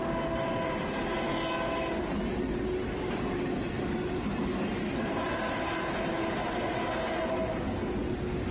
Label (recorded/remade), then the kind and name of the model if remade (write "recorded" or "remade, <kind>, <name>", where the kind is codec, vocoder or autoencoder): recorded